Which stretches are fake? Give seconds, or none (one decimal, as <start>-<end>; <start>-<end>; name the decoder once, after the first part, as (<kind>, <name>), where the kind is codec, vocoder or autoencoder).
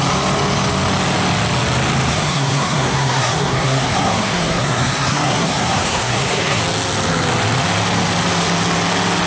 2.1-6.6 (codec, SNAC)